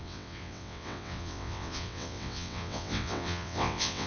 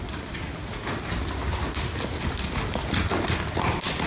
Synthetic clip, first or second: first